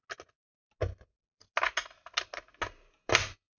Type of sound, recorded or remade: recorded